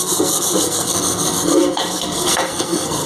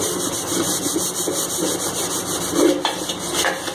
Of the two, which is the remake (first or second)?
first